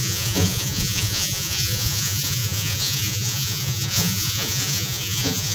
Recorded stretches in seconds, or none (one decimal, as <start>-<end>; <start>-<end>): none